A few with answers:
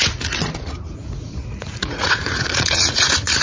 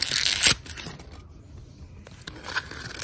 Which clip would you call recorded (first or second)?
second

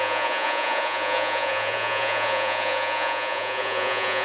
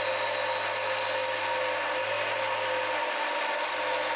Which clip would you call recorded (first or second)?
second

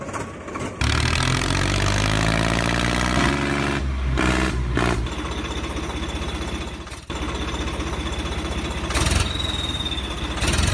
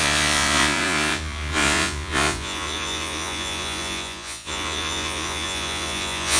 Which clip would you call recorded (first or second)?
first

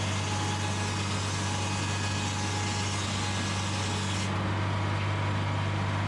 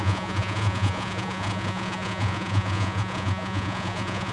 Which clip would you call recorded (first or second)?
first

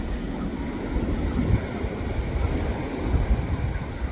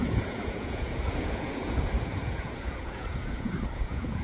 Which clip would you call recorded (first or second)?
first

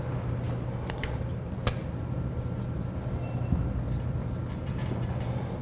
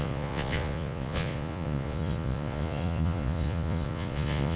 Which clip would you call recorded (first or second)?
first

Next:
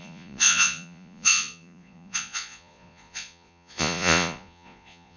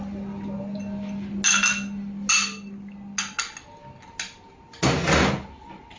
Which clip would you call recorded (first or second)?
second